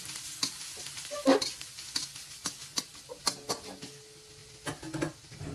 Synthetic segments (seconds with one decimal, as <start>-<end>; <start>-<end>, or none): none